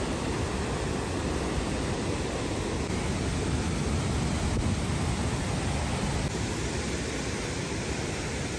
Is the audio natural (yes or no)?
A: yes